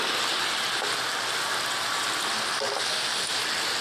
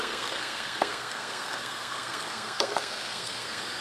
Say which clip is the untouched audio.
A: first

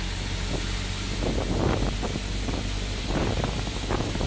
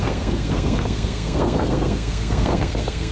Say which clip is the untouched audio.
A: first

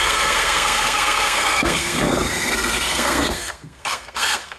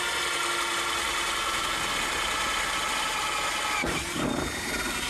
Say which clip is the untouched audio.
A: second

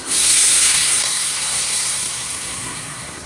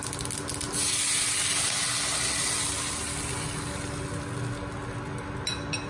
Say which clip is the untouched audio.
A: second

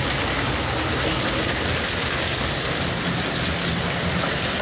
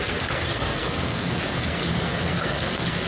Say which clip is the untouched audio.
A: first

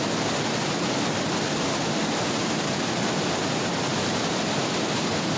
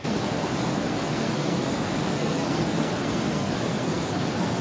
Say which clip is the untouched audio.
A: first